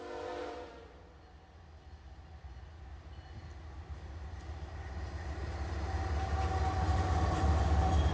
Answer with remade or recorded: recorded